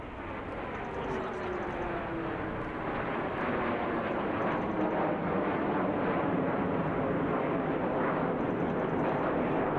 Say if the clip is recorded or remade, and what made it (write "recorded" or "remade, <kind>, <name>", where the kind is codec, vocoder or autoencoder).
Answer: recorded